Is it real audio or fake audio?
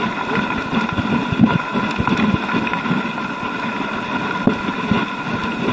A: real